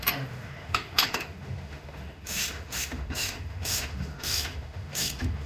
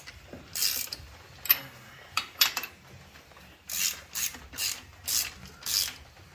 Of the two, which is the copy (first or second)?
first